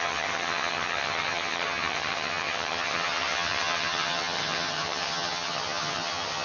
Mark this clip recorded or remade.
remade